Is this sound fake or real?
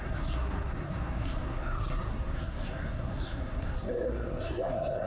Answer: fake